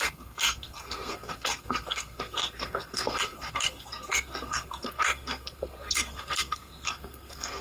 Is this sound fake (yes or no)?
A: yes